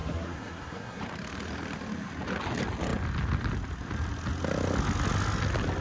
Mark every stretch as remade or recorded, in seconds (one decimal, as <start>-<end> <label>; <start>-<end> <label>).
0.0-1.0 remade; 1.0-5.8 recorded